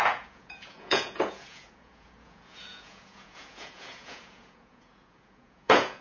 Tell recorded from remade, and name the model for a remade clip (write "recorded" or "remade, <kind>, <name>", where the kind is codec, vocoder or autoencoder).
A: remade, vocoder, Vocos